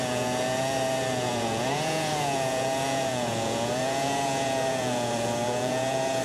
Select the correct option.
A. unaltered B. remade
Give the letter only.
B